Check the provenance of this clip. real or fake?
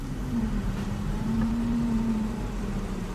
fake